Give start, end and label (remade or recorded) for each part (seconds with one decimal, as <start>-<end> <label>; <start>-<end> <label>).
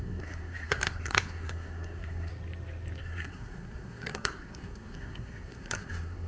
0.0-2.3 remade; 2.3-3.0 recorded; 3.0-6.3 remade